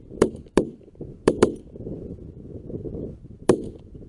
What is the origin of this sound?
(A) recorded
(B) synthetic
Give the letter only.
B